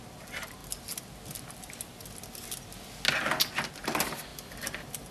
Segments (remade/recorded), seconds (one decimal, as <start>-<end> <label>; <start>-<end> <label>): 0.0-4.3 recorded; 4.3-5.1 remade

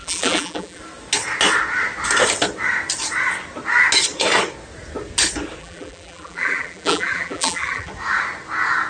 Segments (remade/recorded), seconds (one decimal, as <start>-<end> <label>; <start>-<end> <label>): 0.0-0.8 remade; 0.8-5.6 recorded; 5.6-7.9 remade; 7.9-8.9 recorded

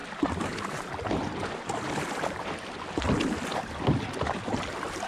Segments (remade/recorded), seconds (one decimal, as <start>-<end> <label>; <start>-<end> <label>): 0.0-5.1 recorded